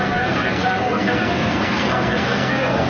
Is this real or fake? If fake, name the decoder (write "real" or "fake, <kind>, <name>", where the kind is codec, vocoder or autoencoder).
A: fake, codec, SNAC